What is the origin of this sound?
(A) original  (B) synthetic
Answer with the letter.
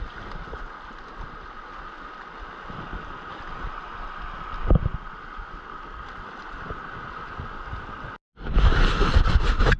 A